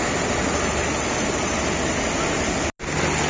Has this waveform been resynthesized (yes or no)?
no